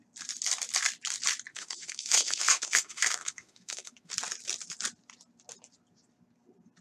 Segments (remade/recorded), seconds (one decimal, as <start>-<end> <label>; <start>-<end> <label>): 0.0-1.5 recorded; 1.5-4.1 remade; 4.1-6.8 recorded